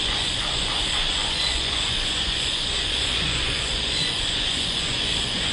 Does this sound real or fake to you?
fake